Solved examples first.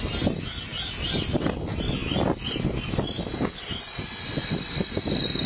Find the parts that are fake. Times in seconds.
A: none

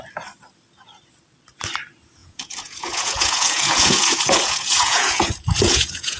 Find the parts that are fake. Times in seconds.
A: 2.2-6.2 (vocoder, Vocos)

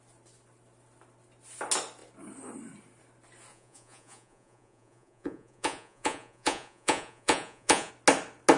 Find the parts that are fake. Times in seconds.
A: 3.5-7.9 (vocoder, Vocos)

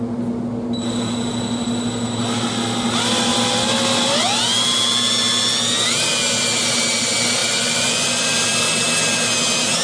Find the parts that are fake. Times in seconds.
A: 7.4-8.3 (vocoder, Vocos)

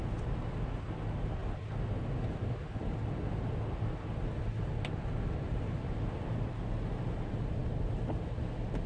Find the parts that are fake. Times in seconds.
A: none

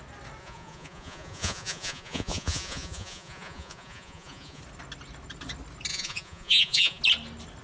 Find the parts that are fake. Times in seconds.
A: 0.4-4.6 (vocoder, Vocos); 5.9-7.0

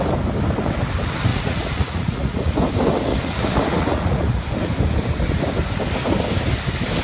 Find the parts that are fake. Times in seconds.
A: 1.3-2.5 (vocoder, Vocos); 3.1-4.4